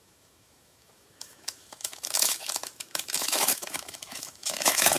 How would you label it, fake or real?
fake